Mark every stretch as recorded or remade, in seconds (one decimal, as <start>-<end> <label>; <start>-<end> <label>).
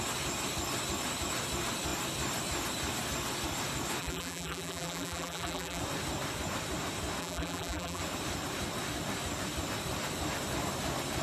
0.0-4.0 recorded; 4.0-5.8 remade; 5.8-7.2 recorded; 7.2-8.0 remade; 8.0-11.2 recorded